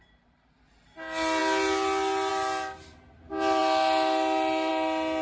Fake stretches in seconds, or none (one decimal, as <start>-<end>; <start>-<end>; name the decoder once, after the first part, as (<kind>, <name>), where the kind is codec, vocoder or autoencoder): none